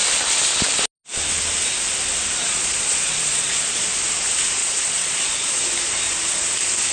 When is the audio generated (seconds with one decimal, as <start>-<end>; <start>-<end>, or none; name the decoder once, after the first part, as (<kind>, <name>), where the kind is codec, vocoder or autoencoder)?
2.4-3.8 (vocoder, Vocos); 4.6-5.6